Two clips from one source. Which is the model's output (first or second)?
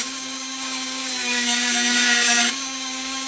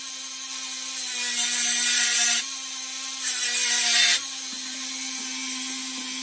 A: first